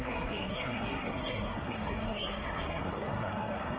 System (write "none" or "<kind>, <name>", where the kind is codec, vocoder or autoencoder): codec, SNAC